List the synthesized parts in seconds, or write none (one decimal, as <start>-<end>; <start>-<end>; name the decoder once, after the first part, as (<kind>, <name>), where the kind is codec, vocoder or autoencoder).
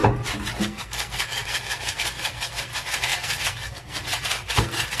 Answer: 0.6-5.0 (codec, SNAC)